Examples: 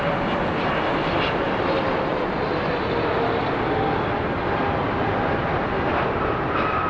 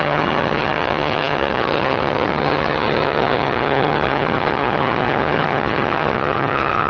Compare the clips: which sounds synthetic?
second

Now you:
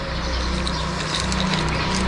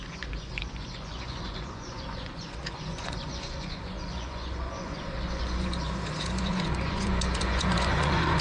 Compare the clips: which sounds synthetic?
second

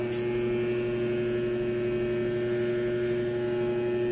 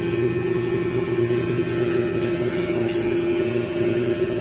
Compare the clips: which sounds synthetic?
second